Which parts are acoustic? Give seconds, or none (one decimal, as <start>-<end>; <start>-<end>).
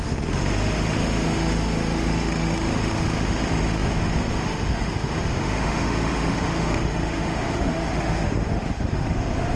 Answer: none